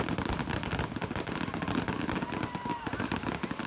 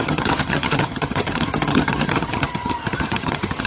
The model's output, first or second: second